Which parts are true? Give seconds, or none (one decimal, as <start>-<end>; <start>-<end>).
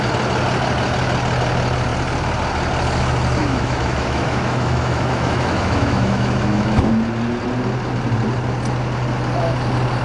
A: 0.0-3.4; 6.9-10.0